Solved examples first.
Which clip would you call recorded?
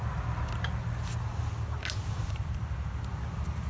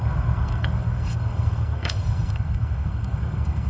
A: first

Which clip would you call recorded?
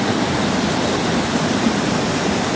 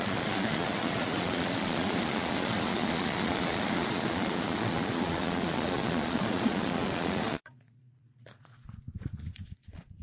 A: first